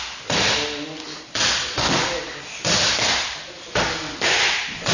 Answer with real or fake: real